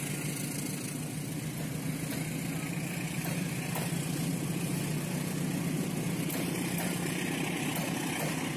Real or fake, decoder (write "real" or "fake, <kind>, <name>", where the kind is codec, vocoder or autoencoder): real